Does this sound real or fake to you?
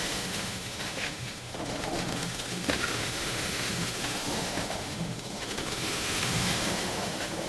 fake